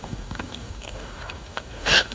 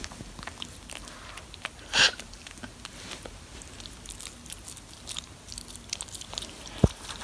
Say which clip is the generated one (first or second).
first